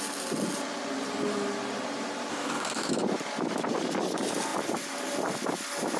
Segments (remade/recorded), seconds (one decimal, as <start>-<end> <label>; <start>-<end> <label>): 0.0-2.3 recorded; 2.3-2.9 remade; 2.9-6.0 recorded